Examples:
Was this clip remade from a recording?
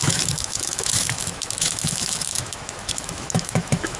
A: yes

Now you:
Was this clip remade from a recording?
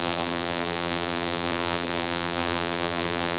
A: yes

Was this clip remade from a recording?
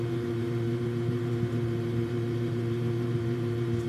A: yes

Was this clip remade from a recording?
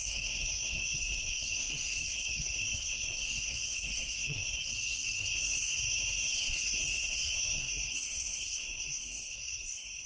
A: yes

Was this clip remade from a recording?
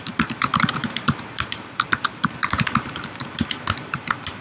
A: yes